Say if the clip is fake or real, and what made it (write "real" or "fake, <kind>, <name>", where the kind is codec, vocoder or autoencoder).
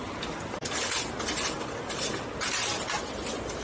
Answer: real